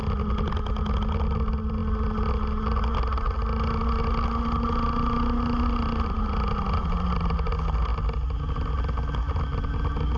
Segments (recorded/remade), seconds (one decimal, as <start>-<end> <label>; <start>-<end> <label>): 0.0-10.2 recorded